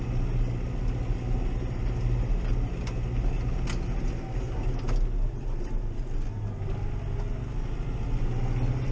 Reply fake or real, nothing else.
real